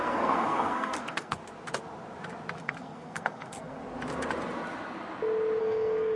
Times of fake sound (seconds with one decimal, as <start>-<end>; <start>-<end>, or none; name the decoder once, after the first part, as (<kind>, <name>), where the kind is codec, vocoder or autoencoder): 0.0-1.4 (codec, SNAC); 2.6-3.8; 5.6-6.2